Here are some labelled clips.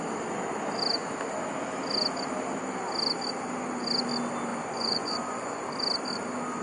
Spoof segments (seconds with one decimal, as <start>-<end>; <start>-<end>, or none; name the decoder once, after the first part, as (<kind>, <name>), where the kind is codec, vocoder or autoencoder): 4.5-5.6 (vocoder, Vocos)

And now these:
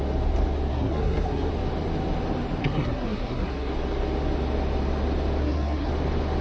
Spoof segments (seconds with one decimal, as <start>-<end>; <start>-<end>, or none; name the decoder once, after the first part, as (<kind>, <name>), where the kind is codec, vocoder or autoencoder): 0.7-1.5 (codec, SNAC); 2.6-3.7; 5.4-5.9

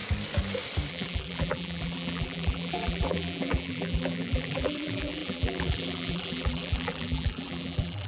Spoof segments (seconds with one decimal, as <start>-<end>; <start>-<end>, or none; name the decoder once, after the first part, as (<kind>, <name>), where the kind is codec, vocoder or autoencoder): 0.9-8.1 (vocoder, BigVGAN v2)